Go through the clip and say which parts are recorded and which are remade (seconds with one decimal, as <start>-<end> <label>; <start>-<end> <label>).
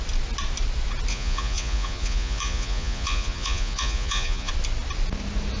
0.0-1.1 recorded; 1.1-4.5 remade; 4.5-5.6 recorded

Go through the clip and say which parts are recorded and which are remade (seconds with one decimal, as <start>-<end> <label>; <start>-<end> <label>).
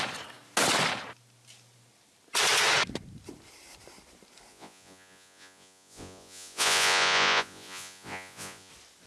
0.0-4.5 recorded; 4.5-8.7 remade; 8.7-9.1 recorded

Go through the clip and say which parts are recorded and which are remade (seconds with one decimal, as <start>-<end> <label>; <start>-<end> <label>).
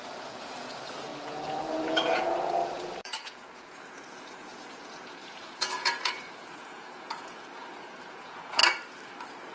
0.0-8.6 remade; 8.6-9.5 recorded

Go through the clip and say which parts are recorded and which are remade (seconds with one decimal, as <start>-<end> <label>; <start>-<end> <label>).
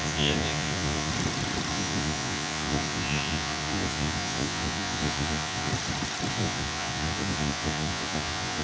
0.0-1.1 remade; 1.1-1.7 recorded; 1.7-5.7 remade; 5.7-6.3 recorded; 6.3-8.6 remade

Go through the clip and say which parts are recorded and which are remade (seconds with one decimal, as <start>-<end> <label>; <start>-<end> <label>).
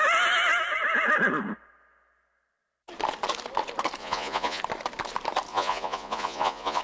0.0-4.0 recorded; 4.0-4.6 remade; 4.6-5.5 recorded; 5.5-6.8 remade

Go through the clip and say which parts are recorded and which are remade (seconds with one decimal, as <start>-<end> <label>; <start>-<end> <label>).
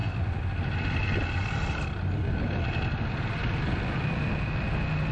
0.0-5.1 recorded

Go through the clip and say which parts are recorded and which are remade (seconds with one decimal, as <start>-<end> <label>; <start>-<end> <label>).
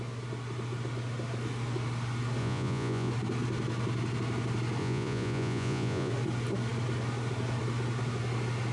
0.0-2.4 recorded; 2.4-3.1 remade; 3.1-4.8 recorded; 4.8-6.1 remade; 6.1-8.7 recorded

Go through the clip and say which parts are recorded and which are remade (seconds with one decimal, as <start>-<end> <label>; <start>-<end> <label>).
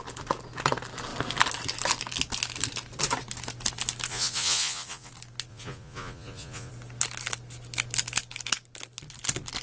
0.0-4.1 recorded; 4.1-5.1 remade; 5.1-5.5 recorded; 5.5-6.7 remade; 6.7-9.6 recorded